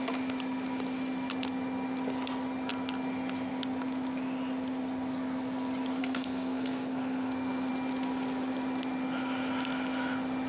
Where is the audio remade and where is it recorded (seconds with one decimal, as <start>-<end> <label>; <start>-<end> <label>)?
0.0-6.0 recorded; 6.0-7.7 remade; 7.7-10.5 recorded